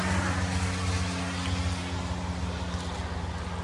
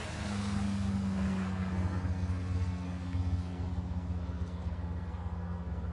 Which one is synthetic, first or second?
second